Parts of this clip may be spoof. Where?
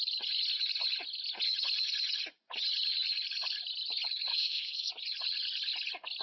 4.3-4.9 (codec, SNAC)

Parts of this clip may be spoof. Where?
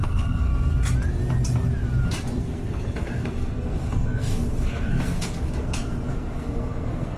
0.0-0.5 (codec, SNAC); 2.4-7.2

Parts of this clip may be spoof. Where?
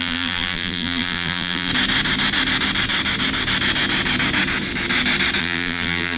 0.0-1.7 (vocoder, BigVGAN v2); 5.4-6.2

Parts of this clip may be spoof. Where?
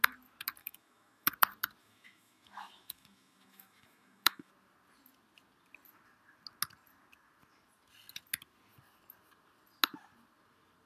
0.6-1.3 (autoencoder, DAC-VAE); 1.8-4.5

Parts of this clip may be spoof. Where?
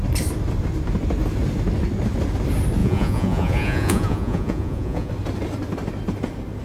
2.8-5.1 (vocoder, Vocos)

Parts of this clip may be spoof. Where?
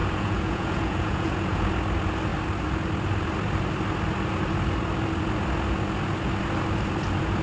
0.0-1.7 (vocoder, Vocos)